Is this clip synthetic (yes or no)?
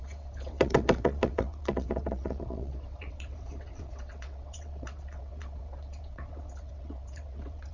yes